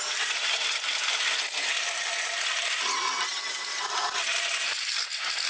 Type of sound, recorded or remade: recorded